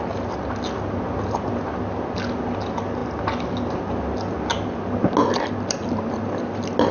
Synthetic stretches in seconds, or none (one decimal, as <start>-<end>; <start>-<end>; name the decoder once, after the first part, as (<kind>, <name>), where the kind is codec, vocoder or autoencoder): none